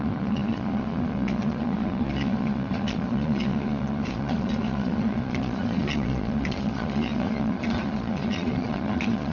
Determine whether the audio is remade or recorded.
remade